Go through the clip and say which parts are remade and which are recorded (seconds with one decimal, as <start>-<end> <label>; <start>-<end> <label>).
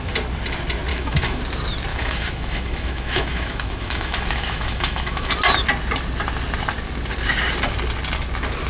0.0-0.9 recorded; 0.9-1.4 remade; 1.4-1.9 recorded; 1.9-5.3 remade; 5.3-8.7 recorded